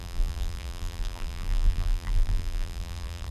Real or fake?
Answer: fake